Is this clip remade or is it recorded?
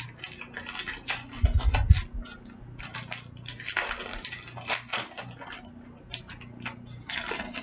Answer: recorded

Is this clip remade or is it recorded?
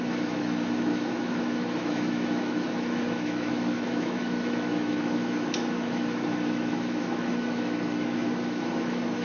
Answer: remade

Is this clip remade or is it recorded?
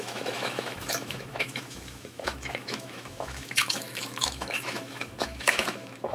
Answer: remade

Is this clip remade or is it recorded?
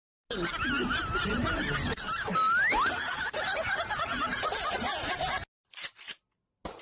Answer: recorded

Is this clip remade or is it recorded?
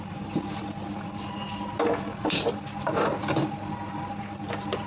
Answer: recorded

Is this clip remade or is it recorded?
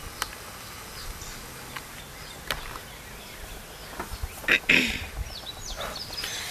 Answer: recorded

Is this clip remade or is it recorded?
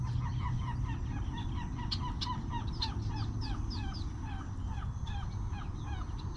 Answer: recorded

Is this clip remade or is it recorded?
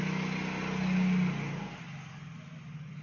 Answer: recorded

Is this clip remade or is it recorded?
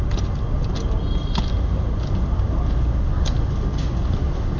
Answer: recorded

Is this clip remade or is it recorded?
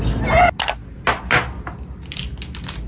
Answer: recorded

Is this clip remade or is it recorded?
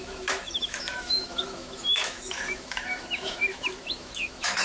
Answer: remade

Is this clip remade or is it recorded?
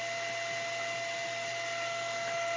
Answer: recorded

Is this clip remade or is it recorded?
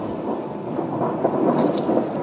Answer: recorded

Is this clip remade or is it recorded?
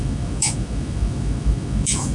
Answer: remade